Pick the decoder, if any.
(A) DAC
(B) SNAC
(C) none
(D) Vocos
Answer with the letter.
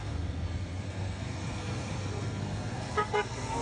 B